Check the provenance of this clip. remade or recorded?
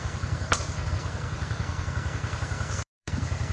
remade